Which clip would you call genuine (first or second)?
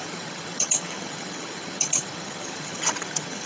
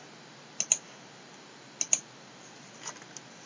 second